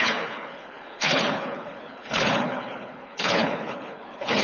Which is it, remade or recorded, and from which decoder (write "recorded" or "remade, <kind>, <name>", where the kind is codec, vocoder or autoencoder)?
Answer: remade, codec, HILCodec